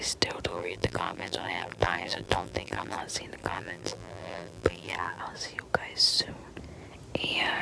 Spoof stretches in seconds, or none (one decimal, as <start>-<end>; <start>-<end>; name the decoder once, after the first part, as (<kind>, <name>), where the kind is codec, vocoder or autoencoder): 0.5-3.0 (vocoder, BigVGAN v2); 3.4-5.2